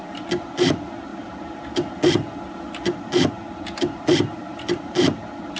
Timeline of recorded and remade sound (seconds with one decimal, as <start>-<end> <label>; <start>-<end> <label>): 0.0-5.6 recorded